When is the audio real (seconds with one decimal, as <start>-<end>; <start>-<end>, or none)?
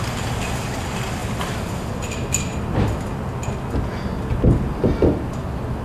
0.0-5.8